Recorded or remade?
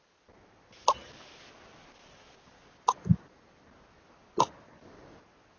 recorded